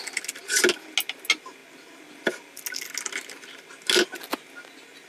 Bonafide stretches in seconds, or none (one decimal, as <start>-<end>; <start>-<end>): 0.0-5.1